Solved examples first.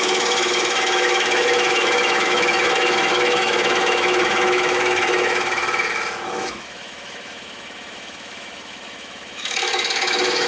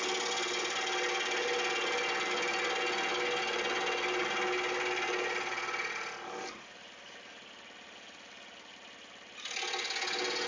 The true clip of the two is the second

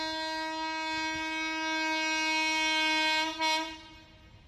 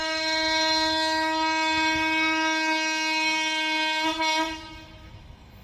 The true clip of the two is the first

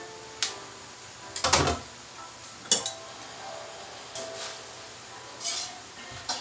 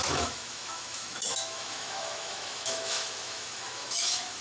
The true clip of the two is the first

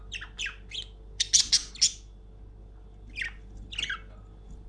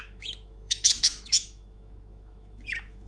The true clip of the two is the first